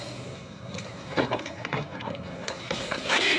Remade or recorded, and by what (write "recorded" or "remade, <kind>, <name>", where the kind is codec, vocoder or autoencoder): remade, codec, SNAC